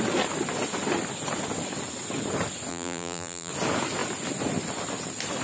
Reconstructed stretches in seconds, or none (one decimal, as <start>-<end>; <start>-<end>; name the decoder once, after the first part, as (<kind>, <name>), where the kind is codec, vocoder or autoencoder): 2.7-3.5 (vocoder, BigVGAN v2)